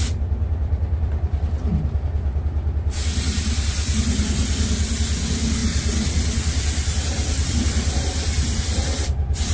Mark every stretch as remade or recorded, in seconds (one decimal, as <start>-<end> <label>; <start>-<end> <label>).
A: 0.0-9.5 recorded